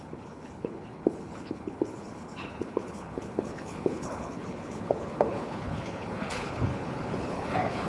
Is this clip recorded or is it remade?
remade